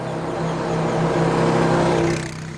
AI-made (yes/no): no